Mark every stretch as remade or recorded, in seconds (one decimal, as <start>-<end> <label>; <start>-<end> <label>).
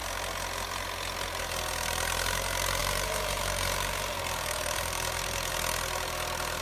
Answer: 0.0-2.8 recorded; 2.8-5.5 remade; 5.5-6.6 recorded